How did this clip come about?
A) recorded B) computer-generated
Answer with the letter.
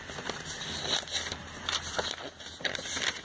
A